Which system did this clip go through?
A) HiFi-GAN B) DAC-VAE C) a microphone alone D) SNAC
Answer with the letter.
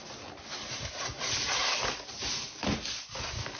C